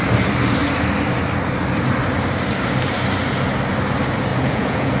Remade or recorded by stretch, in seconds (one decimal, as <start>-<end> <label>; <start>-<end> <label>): 0.0-4.3 recorded; 4.3-5.0 remade